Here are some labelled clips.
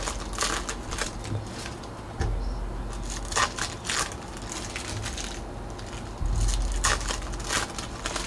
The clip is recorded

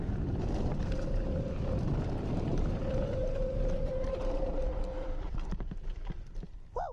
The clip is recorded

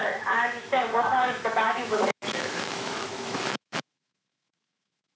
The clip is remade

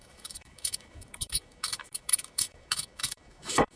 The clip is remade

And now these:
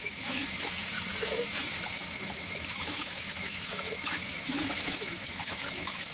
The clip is remade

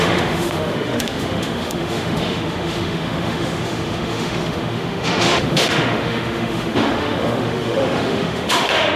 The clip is remade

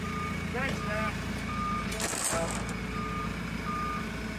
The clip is recorded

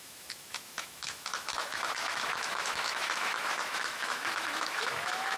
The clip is remade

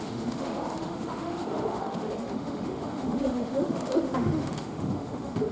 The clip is remade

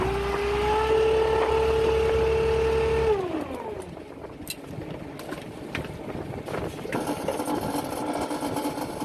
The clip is recorded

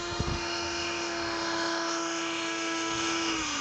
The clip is remade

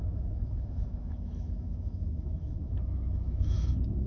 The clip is remade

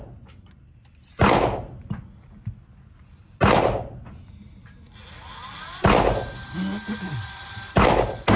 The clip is recorded